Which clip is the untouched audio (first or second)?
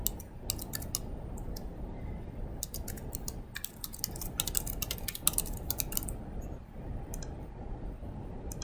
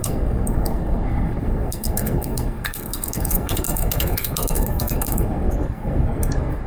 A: first